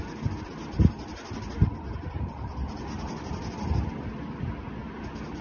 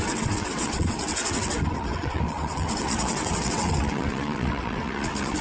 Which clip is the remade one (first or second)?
second